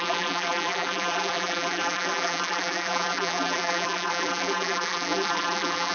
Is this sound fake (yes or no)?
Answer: yes